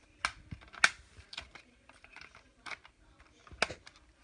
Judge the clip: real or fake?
real